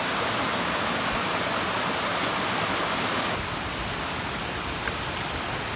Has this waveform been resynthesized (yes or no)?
no